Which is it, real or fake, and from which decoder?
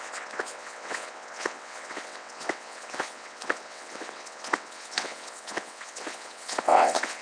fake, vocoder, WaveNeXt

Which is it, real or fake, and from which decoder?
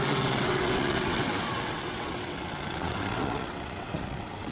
fake, vocoder, WaveNeXt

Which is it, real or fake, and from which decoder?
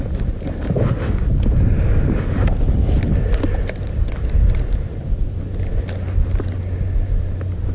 real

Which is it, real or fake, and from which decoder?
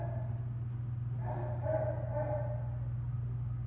real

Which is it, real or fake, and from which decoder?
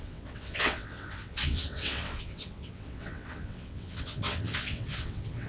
fake, vocoder, WaveNeXt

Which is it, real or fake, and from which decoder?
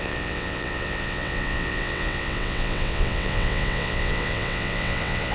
fake, vocoder, WaveNeXt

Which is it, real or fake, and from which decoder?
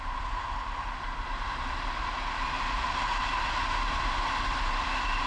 real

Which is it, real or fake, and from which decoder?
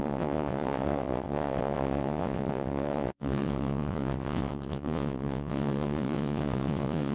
fake, vocoder, WaveNeXt